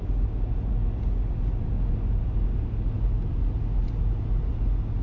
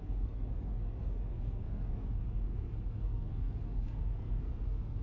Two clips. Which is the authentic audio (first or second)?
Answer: first